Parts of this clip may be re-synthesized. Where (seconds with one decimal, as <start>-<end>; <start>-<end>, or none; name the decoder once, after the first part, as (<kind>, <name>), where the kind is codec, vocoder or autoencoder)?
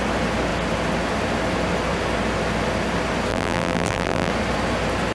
3.3-4.3 (vocoder, BigVGAN v2)